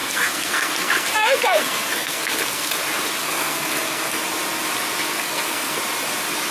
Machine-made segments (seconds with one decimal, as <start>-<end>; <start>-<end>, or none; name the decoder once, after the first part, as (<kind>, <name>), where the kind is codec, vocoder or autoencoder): 0.0-2.7 (codec, SNAC); 3.2-4.2; 5.1-5.8